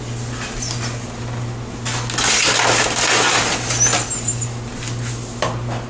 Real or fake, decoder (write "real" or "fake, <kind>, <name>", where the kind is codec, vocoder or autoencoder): real